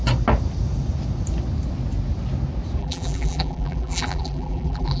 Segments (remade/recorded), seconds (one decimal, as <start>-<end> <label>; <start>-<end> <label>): 0.0-2.8 recorded; 2.8-5.0 remade